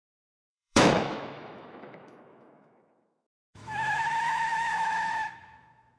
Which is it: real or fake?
fake